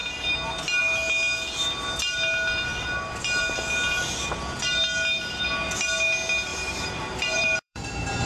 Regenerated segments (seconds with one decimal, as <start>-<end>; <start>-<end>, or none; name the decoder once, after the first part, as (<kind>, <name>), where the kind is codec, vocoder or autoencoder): 6.5-8.3 (vocoder, BigVGAN v2)